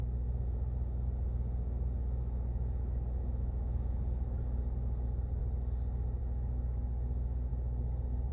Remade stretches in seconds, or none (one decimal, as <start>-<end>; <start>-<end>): 2.5-4.6